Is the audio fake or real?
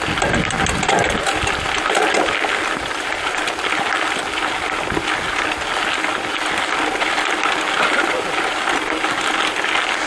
real